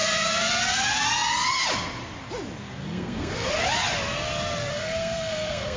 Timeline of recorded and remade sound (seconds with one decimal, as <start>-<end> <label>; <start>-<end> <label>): 0.0-2.8 recorded; 2.8-3.5 remade; 3.5-4.7 recorded; 4.7-5.8 remade